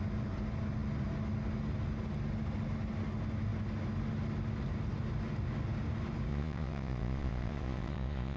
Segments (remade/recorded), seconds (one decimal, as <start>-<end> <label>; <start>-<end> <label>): 0.0-6.3 recorded; 6.3-8.4 remade